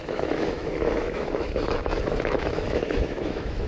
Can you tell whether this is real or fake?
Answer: fake